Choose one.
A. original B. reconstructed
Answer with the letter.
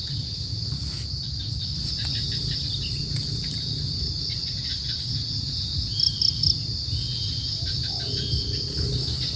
A